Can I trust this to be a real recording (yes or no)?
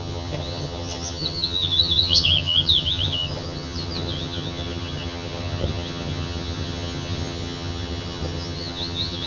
no